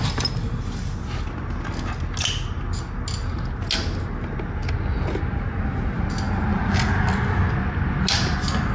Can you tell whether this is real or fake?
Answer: real